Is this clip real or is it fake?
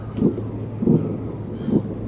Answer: real